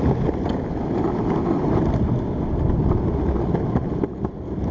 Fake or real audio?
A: real